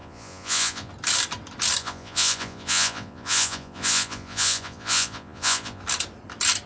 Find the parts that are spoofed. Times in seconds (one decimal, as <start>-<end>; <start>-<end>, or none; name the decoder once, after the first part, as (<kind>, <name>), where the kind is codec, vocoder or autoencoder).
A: 0.0-0.9 (vocoder, Vocos); 1.8-5.8